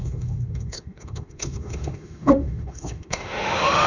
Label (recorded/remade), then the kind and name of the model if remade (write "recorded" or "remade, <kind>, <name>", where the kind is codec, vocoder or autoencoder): remade, autoencoder, DAC-VAE